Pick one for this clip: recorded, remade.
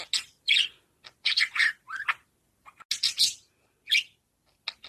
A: recorded